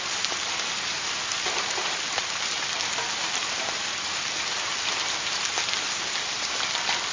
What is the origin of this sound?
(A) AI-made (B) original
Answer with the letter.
B